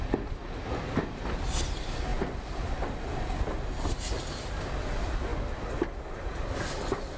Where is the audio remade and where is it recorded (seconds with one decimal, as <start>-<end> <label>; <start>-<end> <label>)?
0.0-7.2 recorded